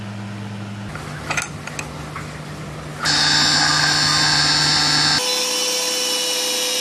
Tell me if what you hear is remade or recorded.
recorded